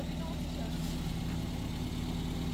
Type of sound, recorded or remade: recorded